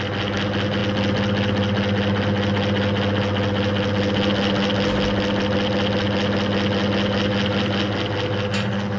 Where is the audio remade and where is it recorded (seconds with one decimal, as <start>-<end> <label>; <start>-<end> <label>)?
0.0-9.0 recorded